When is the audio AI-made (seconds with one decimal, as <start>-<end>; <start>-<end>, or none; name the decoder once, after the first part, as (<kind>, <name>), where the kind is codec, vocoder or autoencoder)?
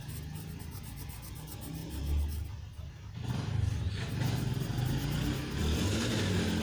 none